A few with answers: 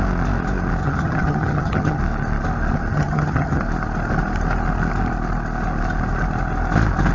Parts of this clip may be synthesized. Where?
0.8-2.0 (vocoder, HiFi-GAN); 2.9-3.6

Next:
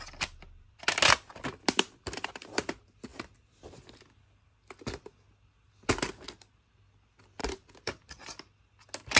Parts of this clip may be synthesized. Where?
7.4-8.1 (vocoder, BigVGAN v2)

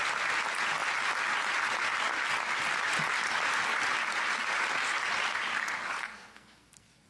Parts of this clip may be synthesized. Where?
6.0-7.1 (codec, SNAC)

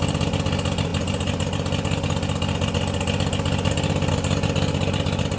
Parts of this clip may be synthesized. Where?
none